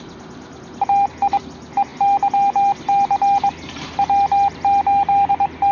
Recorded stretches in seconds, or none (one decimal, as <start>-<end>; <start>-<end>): 0.0-5.7